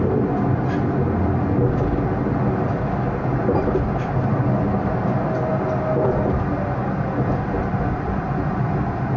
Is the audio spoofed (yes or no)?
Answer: no